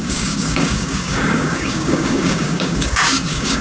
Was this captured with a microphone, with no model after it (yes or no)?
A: no